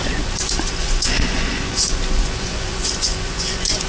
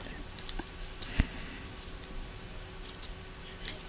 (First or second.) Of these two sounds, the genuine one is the second